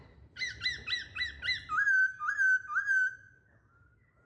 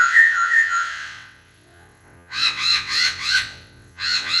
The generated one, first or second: second